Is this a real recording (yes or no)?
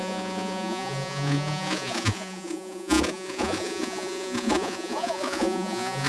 no